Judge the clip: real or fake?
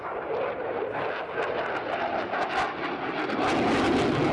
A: real